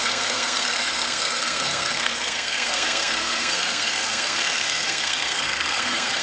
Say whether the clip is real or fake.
fake